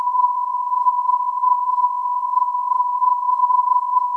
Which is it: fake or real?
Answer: fake